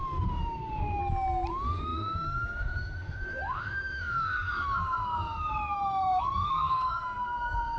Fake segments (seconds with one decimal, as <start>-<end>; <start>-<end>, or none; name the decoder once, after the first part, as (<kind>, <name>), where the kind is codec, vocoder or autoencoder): 0.0-1.0 (autoencoder, DAC-VAE); 1.5-7.8